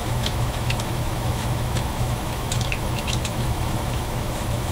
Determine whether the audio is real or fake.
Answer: fake